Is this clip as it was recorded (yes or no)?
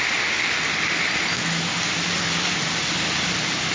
yes